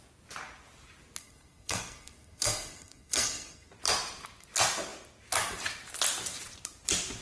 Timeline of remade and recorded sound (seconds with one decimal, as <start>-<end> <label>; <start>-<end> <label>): 0.0-1.2 recorded; 1.2-3.7 remade; 3.7-7.2 recorded